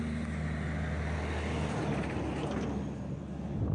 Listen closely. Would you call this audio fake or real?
real